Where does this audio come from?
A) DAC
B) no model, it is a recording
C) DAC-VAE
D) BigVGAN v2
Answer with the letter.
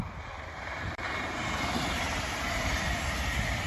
D